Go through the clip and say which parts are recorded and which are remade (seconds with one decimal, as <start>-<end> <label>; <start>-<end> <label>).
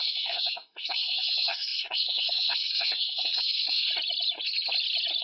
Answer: 0.0-3.9 remade; 3.9-5.2 recorded